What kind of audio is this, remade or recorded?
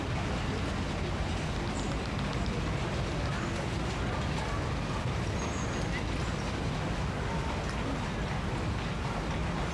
recorded